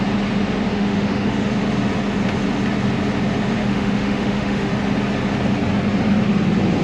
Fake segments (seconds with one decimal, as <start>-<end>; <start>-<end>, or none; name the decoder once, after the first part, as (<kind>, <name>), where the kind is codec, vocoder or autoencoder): 0.7-1.5 (autoencoder, DAC-VAE); 3.6-4.7